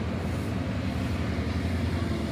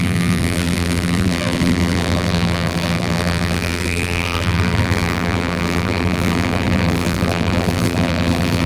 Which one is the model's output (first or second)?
second